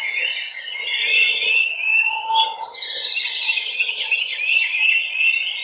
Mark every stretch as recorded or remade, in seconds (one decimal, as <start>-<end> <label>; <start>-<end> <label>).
0.0-1.9 recorded; 1.9-4.9 remade; 4.9-5.6 recorded